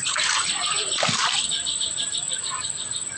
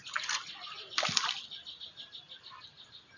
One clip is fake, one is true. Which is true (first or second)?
second